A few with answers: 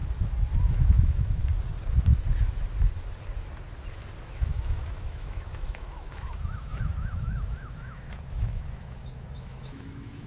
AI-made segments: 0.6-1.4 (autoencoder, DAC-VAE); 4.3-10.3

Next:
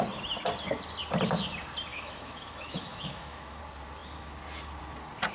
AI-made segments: 1.9-3.6 (autoencoder, DAC-VAE)

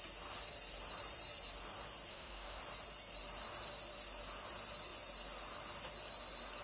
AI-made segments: 2.1-2.6 (autoencoder, DAC-VAE)

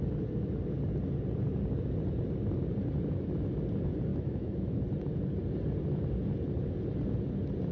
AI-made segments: 4.1-4.8 (autoencoder, DAC-VAE)

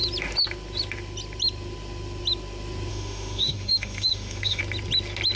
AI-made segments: 2.9-4.6 (autoencoder, DAC-VAE)

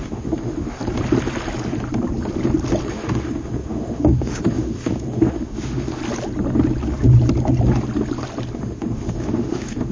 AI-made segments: 0.0-0.8 (autoencoder, DAC-VAE); 2.9-6.0; 8.5-9.9